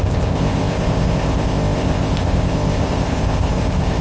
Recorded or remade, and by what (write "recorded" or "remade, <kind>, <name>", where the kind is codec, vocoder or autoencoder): remade, codec, ZipCodec